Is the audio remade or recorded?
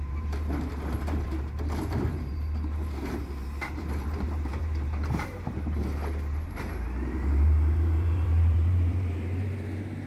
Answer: remade